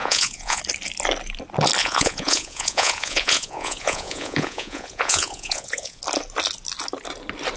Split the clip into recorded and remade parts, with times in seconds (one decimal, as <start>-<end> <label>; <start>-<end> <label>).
0.0-0.6 remade; 0.6-1.8 recorded; 1.8-6.0 remade; 6.0-7.6 recorded